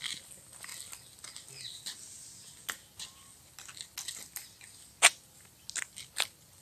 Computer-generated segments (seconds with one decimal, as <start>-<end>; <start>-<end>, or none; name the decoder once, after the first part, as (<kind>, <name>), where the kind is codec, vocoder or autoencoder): none